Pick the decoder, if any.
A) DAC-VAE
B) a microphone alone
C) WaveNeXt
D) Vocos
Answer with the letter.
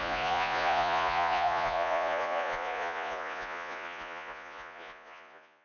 D